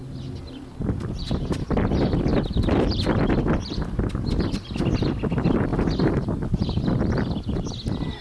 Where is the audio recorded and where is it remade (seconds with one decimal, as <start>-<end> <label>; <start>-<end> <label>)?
0.0-0.7 recorded; 0.7-5.7 remade; 5.7-8.2 recorded